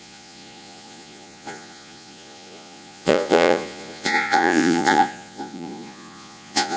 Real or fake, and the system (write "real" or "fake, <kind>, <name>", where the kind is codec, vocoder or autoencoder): fake, vocoder, Vocos